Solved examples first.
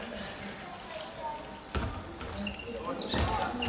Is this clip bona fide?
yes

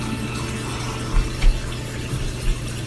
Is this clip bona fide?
yes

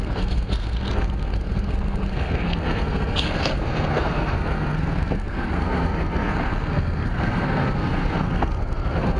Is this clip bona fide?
no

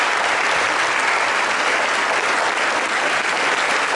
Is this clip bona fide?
yes